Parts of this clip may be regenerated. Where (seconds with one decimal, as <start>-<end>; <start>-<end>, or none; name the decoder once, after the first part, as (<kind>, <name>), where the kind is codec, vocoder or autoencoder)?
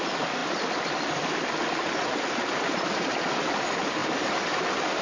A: none